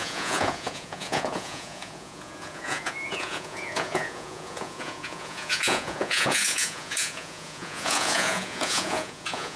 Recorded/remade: remade